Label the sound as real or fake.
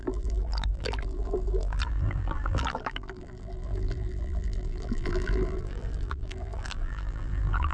fake